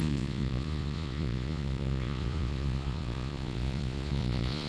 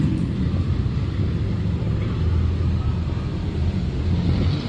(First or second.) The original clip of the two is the second